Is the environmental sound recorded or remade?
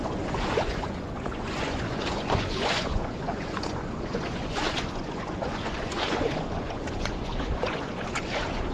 remade